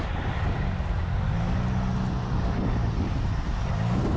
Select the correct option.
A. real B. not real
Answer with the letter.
A